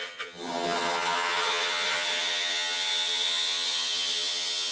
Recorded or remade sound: remade